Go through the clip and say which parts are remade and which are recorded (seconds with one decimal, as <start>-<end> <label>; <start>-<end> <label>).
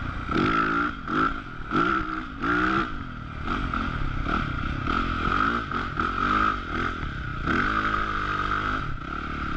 0.0-9.6 recorded